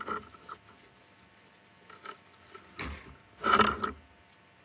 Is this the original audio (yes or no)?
yes